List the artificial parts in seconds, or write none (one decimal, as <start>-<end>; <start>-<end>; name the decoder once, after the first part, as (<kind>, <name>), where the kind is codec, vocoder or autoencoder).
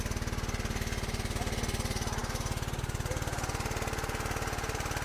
none